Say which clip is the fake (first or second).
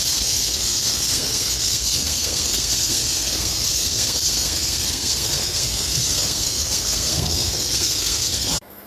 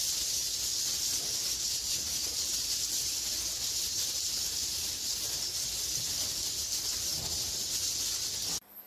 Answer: first